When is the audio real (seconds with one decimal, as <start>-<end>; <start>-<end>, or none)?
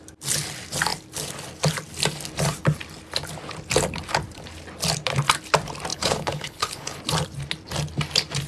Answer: 0.0-5.9; 7.0-8.5